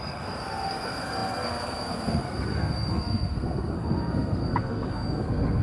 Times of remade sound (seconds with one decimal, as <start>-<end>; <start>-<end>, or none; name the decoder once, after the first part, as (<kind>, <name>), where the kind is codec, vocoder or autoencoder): 0.0-5.6 (codec, SNAC)